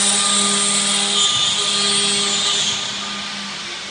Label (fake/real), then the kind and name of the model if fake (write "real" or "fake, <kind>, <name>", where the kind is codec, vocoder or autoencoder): real